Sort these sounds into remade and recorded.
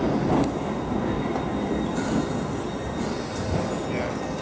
recorded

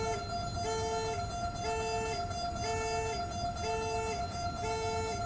recorded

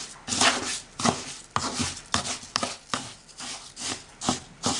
recorded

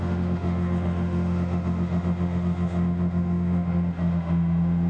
remade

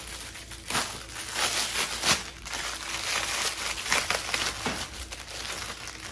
recorded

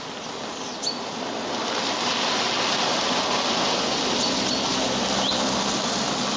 recorded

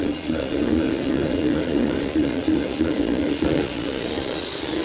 remade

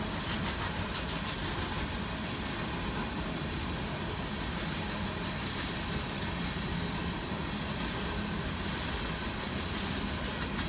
recorded